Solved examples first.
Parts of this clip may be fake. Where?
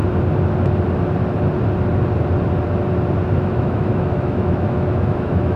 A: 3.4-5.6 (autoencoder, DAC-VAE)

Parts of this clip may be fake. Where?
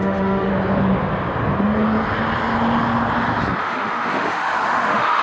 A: 0.0-0.5 (autoencoder, DAC-VAE); 3.6-5.2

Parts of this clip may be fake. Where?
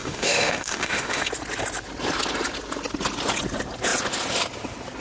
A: 0.0-1.3 (autoencoder, DAC-VAE)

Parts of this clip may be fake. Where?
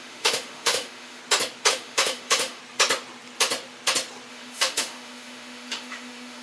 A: 0.0-1.2 (autoencoder, DAC-VAE); 1.7-2.6; 4.3-6.4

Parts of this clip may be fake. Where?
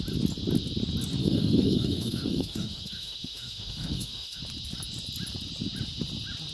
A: 1.2-4.4 (autoencoder, DAC-VAE)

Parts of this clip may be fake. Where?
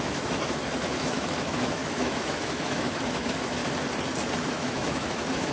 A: 0.0-3.6 (autoencoder, DAC-VAE); 4.4-5.5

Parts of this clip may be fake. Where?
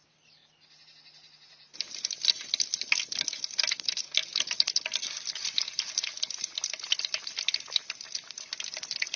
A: none